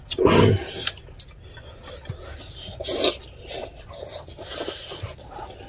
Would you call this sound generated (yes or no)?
no